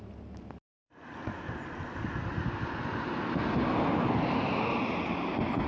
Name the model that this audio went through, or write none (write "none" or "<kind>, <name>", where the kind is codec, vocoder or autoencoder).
none